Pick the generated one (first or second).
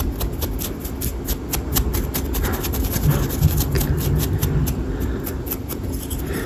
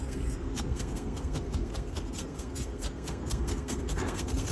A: second